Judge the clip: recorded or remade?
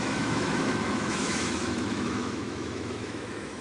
remade